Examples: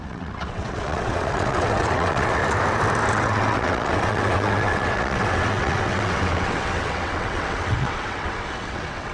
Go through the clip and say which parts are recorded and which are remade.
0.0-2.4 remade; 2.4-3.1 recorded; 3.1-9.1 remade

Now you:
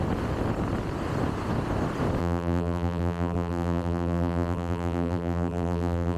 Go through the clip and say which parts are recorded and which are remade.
0.0-2.2 recorded; 2.2-6.2 remade

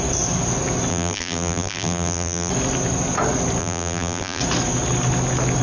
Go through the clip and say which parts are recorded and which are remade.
0.0-0.9 recorded; 0.9-2.5 remade; 2.5-3.6 recorded; 3.6-4.4 remade; 4.4-5.6 recorded

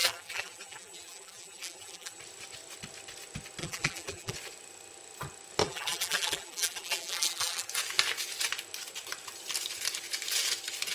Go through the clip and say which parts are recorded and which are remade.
0.0-2.2 remade; 2.2-3.6 recorded; 3.6-4.3 remade; 4.3-5.6 recorded; 5.6-7.7 remade; 7.7-10.9 recorded

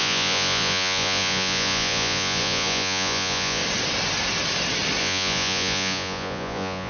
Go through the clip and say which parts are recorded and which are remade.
0.0-3.6 remade; 3.6-5.0 recorded; 5.0-6.9 remade